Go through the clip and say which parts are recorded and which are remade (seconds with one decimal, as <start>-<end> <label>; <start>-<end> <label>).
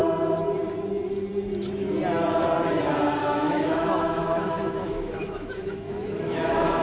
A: 0.0-3.2 recorded; 3.2-6.8 remade